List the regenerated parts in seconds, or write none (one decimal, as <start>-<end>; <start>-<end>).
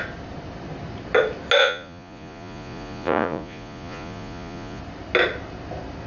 1.6-4.8